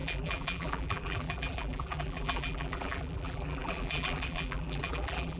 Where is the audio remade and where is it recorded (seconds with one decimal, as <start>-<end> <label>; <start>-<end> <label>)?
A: 0.0-5.4 remade